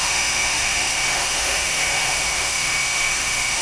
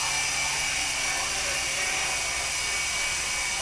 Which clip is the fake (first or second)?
first